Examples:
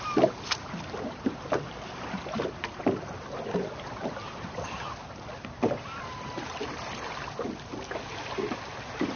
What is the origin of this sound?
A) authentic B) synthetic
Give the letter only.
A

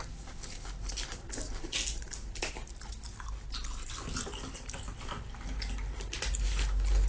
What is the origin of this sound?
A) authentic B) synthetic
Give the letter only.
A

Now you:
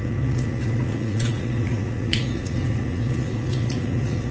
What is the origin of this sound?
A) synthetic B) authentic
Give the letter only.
A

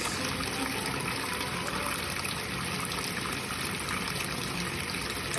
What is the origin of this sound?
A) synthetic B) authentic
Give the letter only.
B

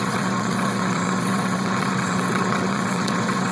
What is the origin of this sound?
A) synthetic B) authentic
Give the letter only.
A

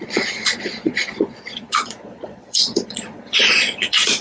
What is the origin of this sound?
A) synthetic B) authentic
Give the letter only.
A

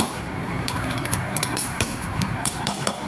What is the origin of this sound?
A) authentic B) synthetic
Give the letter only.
B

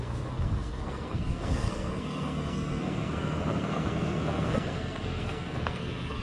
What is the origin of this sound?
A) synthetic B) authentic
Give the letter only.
A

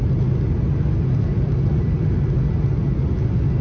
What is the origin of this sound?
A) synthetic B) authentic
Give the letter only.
B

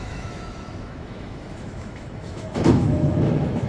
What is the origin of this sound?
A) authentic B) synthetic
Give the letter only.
B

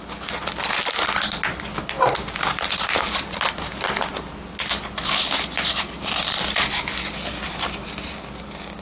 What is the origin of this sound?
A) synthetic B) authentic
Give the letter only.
B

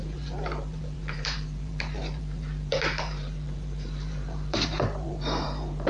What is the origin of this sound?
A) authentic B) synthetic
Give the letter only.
B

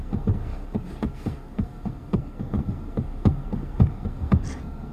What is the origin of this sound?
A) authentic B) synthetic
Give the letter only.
B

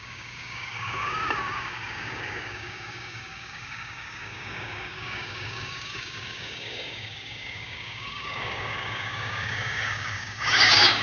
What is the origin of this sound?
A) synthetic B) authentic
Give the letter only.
A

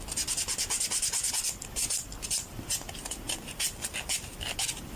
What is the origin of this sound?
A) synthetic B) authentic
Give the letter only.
B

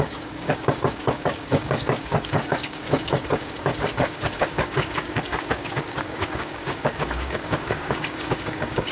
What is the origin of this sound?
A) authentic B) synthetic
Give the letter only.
B